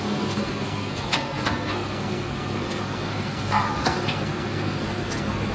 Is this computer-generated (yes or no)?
yes